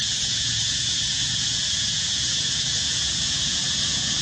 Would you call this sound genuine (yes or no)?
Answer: no